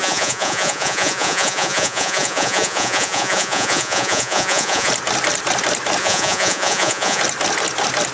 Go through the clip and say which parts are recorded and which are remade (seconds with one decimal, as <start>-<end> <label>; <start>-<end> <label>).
0.0-4.9 remade; 4.9-6.0 recorded; 6.0-7.2 remade; 7.2-8.1 recorded